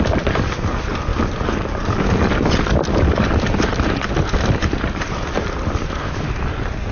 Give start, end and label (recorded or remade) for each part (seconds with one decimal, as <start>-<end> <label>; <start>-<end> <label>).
0.0-6.9 recorded

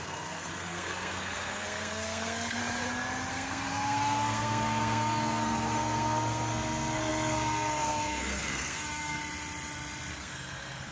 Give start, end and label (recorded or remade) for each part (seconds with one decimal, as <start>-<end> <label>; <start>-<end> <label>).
0.0-2.6 remade; 2.6-3.3 recorded; 3.3-9.2 remade; 9.2-10.1 recorded; 10.1-10.9 remade

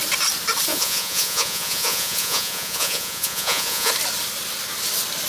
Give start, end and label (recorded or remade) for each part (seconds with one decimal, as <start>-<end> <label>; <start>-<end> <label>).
0.0-0.7 recorded; 0.7-3.9 remade; 3.9-5.3 recorded

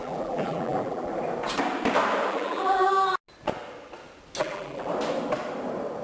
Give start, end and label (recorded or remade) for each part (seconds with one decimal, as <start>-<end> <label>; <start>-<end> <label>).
0.0-1.1 remade; 1.1-2.3 recorded; 2.3-2.9 remade; 2.9-4.4 recorded; 4.4-4.9 remade; 4.9-6.0 recorded

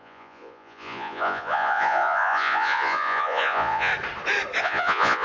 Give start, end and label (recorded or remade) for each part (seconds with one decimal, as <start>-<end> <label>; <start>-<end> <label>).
0.0-3.9 remade; 3.9-4.6 recorded; 4.6-5.2 remade

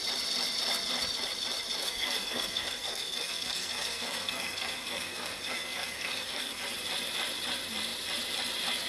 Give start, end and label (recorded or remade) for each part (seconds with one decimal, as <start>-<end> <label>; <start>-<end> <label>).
0.0-1.8 recorded; 1.8-6.6 remade; 6.6-8.9 recorded

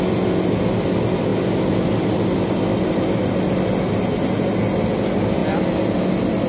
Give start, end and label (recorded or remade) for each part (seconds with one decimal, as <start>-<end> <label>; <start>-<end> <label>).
0.0-6.5 recorded

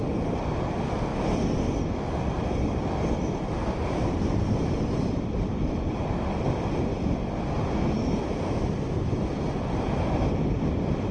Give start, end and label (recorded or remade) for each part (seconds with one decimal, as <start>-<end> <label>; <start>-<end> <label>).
0.0-1.1 remade; 1.1-4.1 recorded; 4.1-6.9 remade; 6.9-9.4 recorded; 9.4-11.1 remade